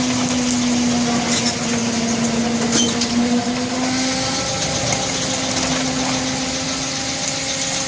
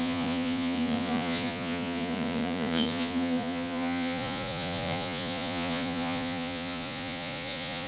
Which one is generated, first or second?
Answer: second